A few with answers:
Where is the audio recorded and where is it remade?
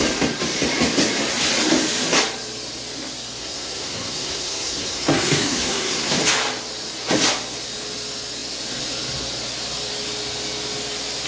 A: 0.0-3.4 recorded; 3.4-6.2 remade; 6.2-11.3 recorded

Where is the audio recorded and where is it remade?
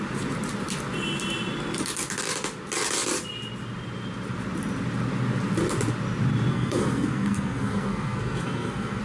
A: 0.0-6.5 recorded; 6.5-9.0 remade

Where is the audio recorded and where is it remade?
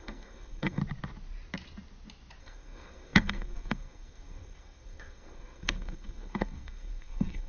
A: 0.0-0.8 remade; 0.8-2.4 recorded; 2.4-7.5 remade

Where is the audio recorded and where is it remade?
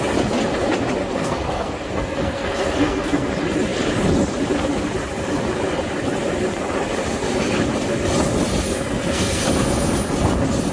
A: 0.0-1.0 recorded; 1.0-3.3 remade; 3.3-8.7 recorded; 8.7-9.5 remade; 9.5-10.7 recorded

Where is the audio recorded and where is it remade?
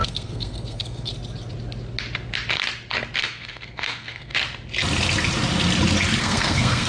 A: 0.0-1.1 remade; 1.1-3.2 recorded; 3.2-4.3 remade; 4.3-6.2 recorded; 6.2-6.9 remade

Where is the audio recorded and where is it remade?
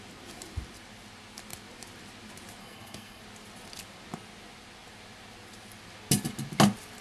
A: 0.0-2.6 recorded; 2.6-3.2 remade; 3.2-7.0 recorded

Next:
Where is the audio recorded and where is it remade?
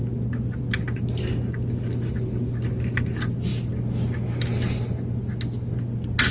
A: 0.0-6.3 recorded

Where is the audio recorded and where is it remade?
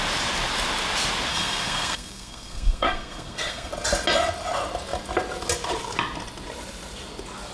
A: 0.0-1.3 recorded; 1.3-3.7 remade; 3.7-7.5 recorded